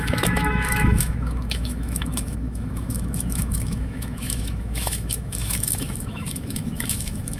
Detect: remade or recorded remade